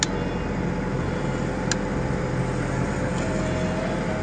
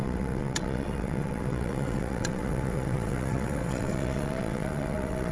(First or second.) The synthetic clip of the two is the second